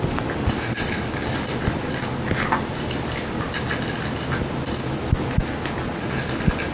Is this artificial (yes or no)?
no